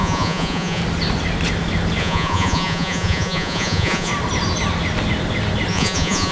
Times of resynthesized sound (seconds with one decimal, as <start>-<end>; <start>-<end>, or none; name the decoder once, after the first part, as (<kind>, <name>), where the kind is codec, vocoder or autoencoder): 0.0-0.8 (vocoder, Vocos); 2.0-4.1; 5.7-6.3

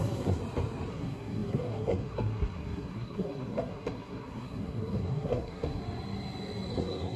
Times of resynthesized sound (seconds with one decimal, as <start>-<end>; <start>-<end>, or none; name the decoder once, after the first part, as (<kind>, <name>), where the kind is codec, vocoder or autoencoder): 0.0-0.4 (codec, SNAC); 0.9-5.8; 6.7-7.2

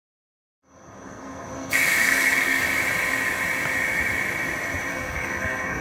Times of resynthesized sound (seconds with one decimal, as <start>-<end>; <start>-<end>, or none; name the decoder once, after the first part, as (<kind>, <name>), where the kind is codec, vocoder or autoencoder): 0.5-2.6 (codec, SNAC); 4.9-5.8

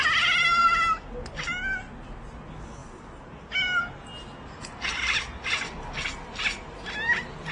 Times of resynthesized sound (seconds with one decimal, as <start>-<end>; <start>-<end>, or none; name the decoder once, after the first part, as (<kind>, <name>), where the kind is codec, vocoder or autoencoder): none

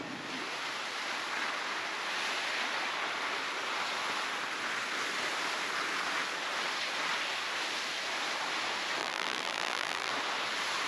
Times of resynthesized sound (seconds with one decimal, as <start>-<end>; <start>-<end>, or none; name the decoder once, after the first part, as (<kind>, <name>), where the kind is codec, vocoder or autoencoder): 9.0-10.1 (vocoder, BigVGAN v2)

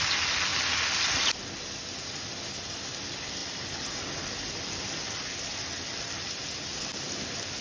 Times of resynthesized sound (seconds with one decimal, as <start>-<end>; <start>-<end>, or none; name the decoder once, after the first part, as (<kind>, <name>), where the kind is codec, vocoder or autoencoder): none